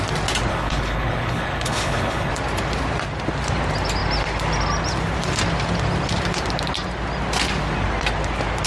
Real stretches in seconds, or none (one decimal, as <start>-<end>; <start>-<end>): 0.0-0.5; 2.3-8.7